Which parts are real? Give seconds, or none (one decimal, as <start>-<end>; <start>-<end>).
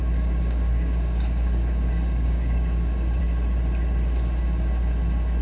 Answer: 3.2-5.4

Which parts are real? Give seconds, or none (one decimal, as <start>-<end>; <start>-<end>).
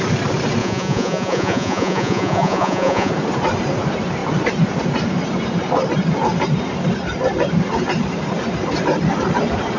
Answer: 0.0-0.6; 3.1-9.8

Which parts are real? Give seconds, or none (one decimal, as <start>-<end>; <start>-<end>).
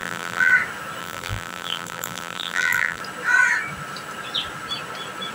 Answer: 0.5-1.0; 3.0-5.3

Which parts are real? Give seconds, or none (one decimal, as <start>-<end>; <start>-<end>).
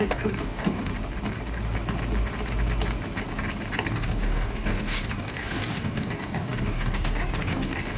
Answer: 0.9-3.9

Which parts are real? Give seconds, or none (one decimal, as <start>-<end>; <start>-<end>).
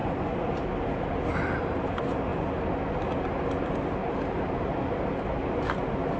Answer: 0.0-1.1; 2.3-6.2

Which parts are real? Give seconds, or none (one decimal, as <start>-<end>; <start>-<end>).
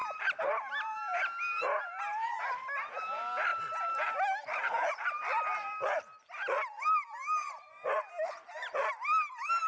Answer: 0.0-9.7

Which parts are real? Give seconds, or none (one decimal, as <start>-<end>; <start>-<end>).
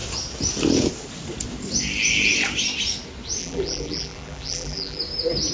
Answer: 0.0-3.4; 5.0-5.5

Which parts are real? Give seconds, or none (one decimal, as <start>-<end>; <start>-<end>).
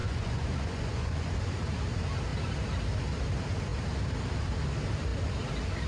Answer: 1.3-5.9